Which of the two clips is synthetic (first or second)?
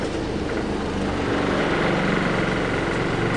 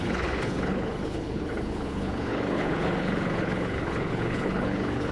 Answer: second